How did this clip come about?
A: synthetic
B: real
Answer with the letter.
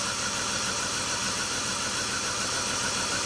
B